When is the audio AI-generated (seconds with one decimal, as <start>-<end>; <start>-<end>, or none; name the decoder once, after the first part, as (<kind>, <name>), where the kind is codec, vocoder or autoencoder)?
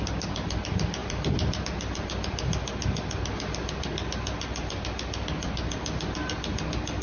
1.0-1.6 (vocoder, BigVGAN v2)